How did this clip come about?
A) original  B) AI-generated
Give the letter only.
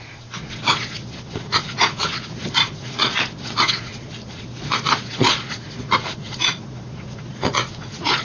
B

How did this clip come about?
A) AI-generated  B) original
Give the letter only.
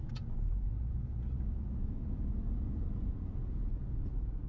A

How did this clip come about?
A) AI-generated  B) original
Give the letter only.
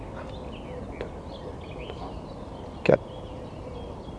B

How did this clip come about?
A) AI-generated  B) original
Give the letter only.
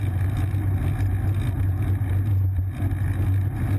B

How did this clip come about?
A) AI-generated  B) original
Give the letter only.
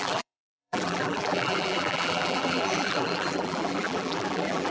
A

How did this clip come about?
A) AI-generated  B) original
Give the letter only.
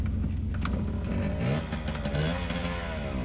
B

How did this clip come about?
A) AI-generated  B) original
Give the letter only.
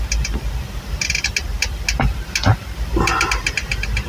B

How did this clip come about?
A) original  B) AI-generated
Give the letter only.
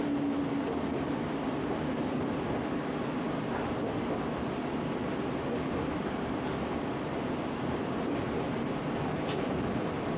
A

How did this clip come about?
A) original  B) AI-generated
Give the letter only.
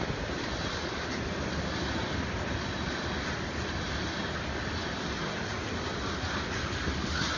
A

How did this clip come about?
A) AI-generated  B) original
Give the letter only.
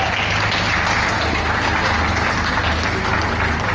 B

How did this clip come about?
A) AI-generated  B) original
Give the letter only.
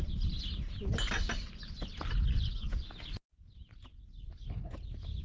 B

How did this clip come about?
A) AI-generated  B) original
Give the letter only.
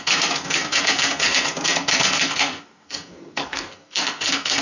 A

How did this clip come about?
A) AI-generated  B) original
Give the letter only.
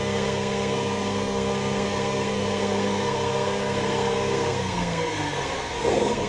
A